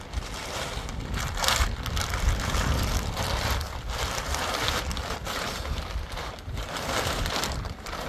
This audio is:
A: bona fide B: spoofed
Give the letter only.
B